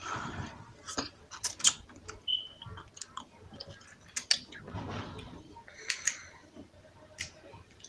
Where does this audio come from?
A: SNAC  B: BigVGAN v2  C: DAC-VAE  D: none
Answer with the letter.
D